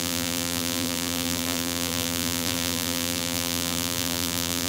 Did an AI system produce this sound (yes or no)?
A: yes